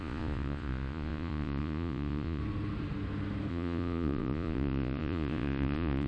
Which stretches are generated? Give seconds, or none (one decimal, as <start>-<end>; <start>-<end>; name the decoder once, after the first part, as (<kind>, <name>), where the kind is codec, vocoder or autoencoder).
0.0-2.4 (vocoder, Vocos); 3.5-6.1